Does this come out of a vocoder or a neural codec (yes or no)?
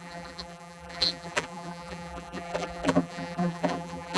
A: yes